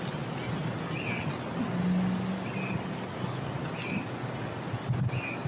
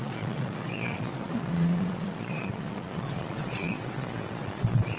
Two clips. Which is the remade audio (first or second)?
second